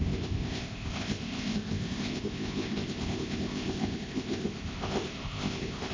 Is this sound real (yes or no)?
no